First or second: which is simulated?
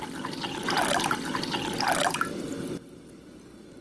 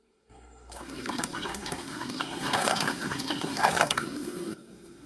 second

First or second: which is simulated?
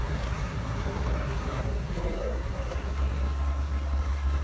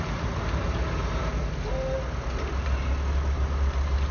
first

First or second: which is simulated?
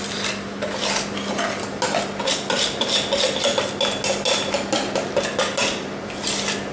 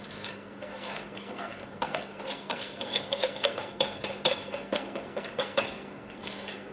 second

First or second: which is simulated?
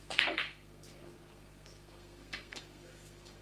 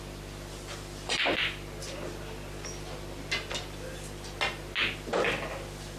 first